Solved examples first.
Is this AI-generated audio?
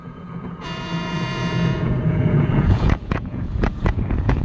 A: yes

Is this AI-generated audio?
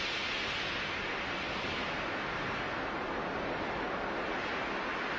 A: no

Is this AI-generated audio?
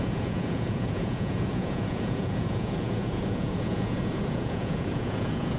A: yes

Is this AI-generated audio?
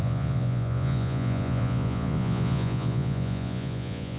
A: yes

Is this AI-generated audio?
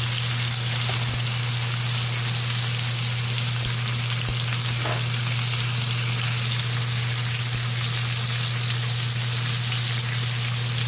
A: no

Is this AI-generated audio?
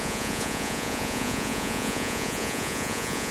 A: yes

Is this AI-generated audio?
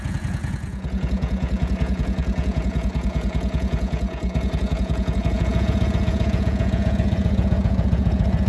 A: yes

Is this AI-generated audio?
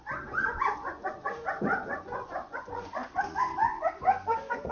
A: yes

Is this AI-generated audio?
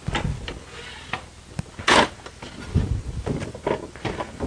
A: no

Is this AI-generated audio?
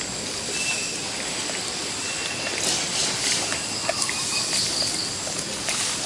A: no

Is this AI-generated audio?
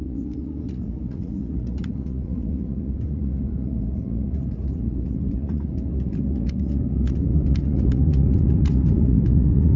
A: yes